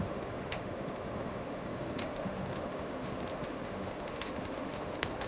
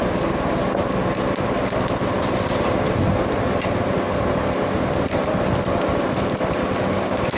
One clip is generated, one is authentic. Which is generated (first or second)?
first